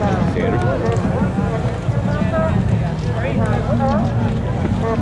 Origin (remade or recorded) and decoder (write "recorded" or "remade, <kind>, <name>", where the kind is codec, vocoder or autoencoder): recorded